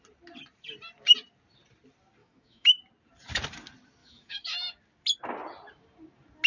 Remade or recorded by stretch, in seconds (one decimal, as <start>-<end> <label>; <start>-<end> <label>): 0.0-2.2 recorded; 2.2-2.8 remade; 2.8-4.0 recorded; 4.0-4.8 remade; 4.8-6.5 recorded